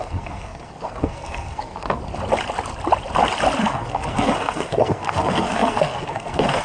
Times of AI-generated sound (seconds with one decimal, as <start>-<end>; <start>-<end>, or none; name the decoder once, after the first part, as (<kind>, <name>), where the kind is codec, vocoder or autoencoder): 0.0-2.0 (codec, SNAC); 3.6-6.6